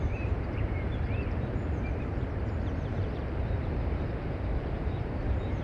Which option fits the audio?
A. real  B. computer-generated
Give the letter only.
B